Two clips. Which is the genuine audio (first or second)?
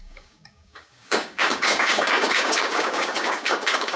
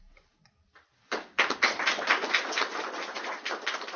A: second